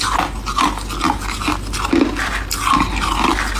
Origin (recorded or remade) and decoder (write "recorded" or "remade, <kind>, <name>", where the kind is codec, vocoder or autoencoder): recorded